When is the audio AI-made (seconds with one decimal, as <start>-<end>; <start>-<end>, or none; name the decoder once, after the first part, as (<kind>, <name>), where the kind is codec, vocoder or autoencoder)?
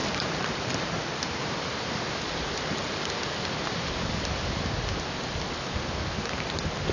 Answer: 0.0-3.0 (vocoder, BigVGAN v2)